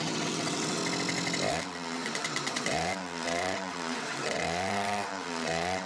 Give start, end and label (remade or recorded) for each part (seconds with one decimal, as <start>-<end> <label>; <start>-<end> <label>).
0.0-0.8 remade; 0.8-1.5 recorded; 1.5-5.9 remade